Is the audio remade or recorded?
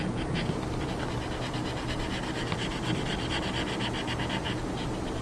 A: recorded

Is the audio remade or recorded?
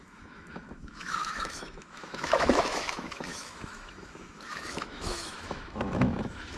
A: remade